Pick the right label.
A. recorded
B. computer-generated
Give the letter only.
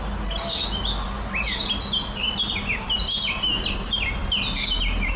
A